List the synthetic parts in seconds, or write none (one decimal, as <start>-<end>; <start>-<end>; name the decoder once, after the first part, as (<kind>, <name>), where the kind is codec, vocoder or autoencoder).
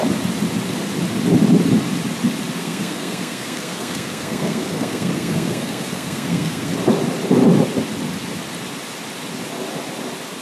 2.6-6.7 (codec, SNAC)